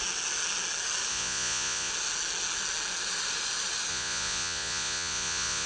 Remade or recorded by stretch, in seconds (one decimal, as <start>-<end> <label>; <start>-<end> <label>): 0.0-1.1 recorded; 1.1-1.9 remade; 1.9-3.9 recorded; 3.9-5.7 remade